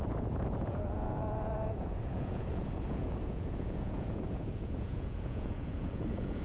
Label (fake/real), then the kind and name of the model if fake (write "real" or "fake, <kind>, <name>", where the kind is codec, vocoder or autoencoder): fake, vocoder, Vocos